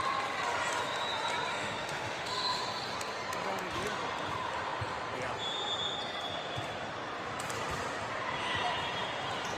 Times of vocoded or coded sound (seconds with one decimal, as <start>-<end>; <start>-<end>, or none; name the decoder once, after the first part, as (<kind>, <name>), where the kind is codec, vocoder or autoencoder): 1.5-2.6 (autoencoder, DAC-VAE)